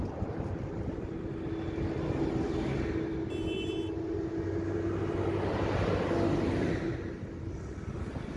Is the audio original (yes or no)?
yes